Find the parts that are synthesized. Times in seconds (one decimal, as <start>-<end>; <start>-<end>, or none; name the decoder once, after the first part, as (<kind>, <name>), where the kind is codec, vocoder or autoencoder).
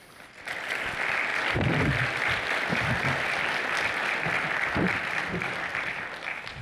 none